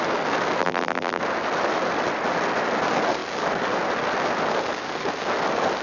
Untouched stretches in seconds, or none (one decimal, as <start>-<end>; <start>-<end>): 0.0-0.6; 1.2-5.8